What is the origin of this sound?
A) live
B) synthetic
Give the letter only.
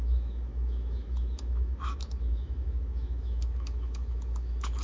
B